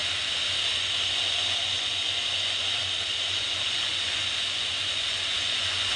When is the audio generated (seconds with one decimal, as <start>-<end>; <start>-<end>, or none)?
0.7-6.0